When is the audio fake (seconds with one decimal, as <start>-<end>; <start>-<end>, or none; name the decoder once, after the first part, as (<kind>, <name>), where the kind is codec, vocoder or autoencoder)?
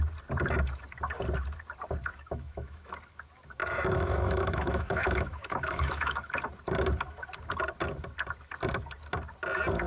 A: 2.1-2.9 (autoencoder, DAC-VAE); 3.6-6.3